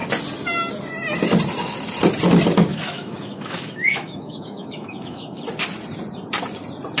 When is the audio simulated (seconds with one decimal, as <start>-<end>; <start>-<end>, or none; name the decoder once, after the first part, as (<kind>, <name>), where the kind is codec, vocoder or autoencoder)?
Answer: 2.7-5.4 (autoencoder, DAC-VAE)